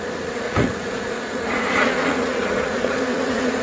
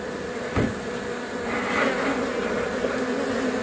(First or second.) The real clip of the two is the second